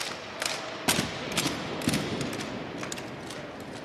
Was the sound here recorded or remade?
recorded